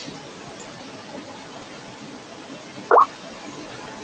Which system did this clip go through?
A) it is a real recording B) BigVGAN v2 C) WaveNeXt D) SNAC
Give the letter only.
A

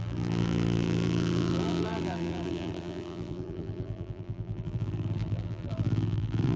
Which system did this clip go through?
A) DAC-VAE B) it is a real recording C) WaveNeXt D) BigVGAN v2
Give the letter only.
D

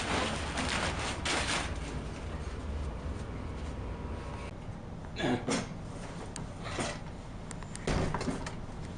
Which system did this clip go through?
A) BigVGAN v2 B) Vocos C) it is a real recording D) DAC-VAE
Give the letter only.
C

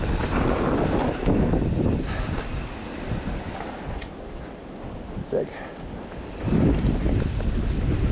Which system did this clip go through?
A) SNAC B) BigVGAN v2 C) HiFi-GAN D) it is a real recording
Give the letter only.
D